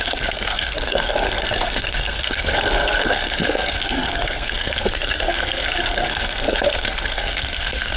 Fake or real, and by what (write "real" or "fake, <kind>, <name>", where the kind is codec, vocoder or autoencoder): fake, codec, SNAC